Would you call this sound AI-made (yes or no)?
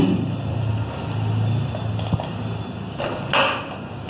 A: no